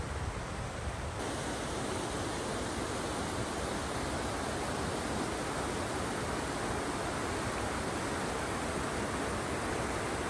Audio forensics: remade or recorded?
recorded